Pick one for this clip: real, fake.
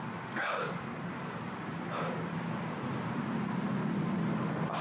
real